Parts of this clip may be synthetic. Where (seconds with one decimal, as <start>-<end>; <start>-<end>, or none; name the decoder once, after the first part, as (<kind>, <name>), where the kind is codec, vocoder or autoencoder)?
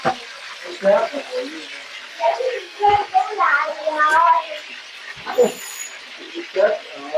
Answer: 2.1-2.9 (codec, SNAC)